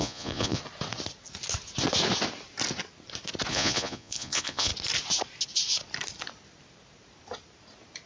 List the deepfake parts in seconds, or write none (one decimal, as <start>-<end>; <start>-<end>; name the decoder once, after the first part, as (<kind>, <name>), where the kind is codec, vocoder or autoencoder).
0.0-0.6 (vocoder, Vocos); 3.5-4.7